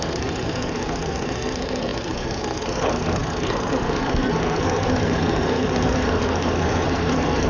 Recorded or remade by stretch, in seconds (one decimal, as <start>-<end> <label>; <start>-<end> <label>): 0.0-7.5 remade